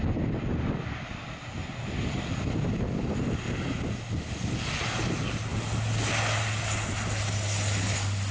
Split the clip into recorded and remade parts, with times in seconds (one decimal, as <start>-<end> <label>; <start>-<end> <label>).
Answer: 0.0-8.3 recorded